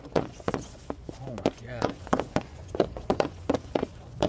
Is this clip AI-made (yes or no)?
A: yes